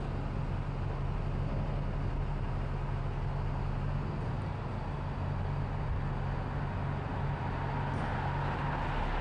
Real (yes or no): yes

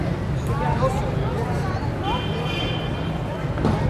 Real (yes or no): yes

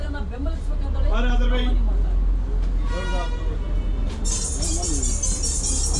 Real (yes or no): yes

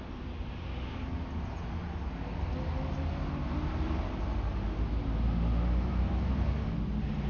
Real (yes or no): yes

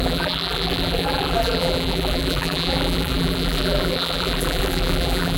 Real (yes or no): no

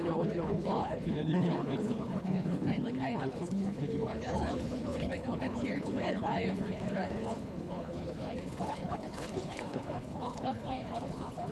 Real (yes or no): no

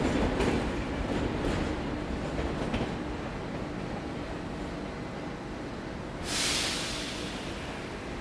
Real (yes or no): no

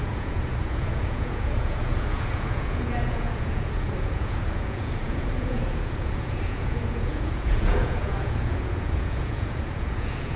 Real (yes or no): no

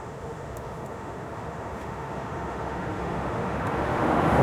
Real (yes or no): no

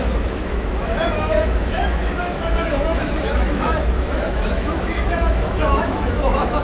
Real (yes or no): no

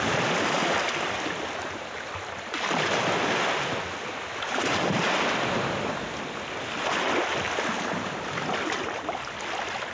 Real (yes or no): yes